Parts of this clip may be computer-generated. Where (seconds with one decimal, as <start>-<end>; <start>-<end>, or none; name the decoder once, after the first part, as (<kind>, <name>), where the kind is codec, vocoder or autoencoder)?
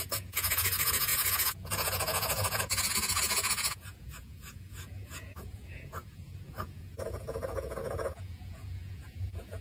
0.0-9.6 (vocoder, Vocos)